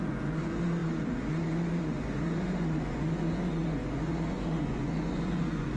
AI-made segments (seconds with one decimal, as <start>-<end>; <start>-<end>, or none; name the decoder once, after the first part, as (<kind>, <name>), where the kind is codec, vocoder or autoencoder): 0.0-5.8 (vocoder, Vocos)